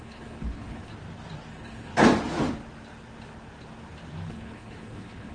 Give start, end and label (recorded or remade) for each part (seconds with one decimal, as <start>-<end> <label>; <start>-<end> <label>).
0.0-0.9 remade; 0.9-1.5 recorded; 1.5-1.9 remade; 1.9-4.3 recorded; 4.3-5.3 remade